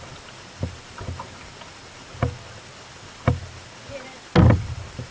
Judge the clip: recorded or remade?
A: recorded